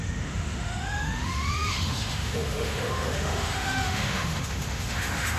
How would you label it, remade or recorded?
remade